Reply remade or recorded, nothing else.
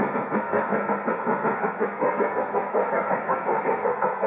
remade